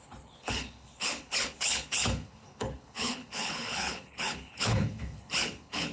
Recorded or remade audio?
remade